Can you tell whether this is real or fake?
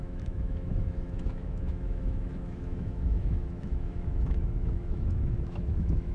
fake